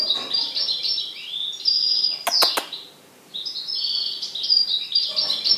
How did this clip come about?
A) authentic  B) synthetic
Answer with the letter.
A